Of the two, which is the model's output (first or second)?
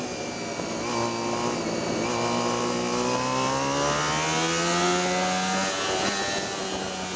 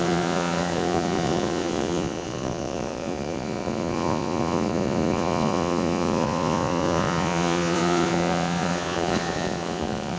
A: second